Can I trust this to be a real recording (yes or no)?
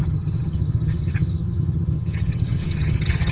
no